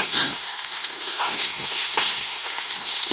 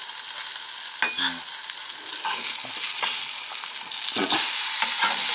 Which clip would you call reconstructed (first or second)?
first